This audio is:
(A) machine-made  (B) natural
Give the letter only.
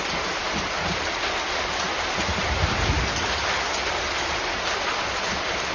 B